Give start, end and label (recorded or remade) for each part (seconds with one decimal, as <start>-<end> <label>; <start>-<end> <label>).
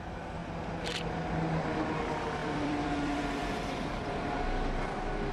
0.0-2.4 recorded; 2.4-3.9 remade; 3.9-5.3 recorded